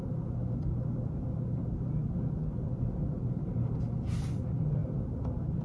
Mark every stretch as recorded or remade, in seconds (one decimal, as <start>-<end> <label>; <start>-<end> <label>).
0.0-5.6 recorded